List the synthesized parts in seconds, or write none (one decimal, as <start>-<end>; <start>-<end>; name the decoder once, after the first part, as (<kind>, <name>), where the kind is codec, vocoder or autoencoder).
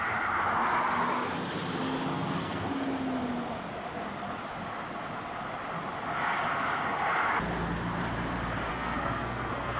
2.1-2.7 (codec, SNAC); 8.7-9.8